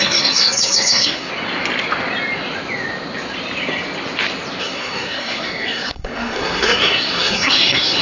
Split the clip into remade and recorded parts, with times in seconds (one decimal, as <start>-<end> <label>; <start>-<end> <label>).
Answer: 0.0-1.3 remade; 1.3-4.6 recorded; 4.6-8.0 remade